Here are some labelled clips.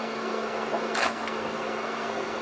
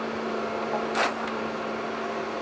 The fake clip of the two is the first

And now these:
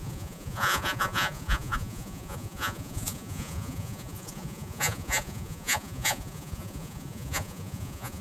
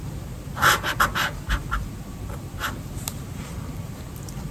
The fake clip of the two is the first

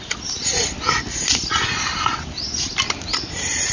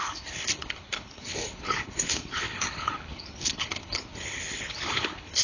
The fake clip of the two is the second